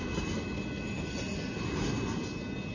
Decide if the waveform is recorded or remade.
recorded